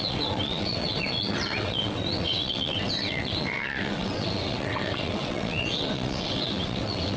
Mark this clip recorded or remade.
remade